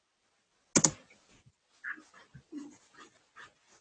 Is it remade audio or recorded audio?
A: recorded